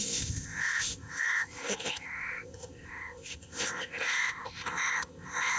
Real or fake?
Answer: fake